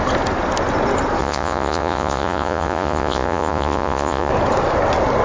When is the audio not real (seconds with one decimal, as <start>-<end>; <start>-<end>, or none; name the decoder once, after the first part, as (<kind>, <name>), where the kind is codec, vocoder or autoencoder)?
1.2-4.3 (vocoder, Vocos)